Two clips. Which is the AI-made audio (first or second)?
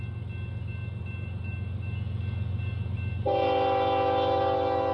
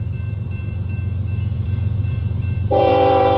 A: second